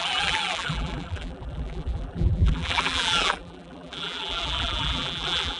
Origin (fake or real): fake